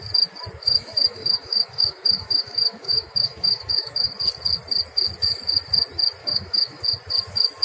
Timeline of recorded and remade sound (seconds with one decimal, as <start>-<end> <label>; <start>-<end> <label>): 0.0-0.6 recorded; 0.6-4.1 remade; 4.1-6.2 recorded; 6.2-6.8 remade; 6.8-7.6 recorded